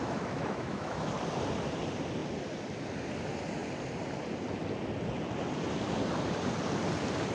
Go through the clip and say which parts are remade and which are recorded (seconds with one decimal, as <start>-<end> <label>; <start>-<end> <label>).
0.0-1.1 remade; 1.1-7.3 recorded